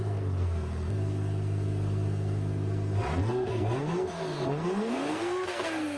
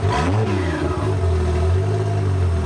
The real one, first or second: second